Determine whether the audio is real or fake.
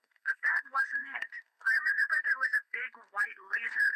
fake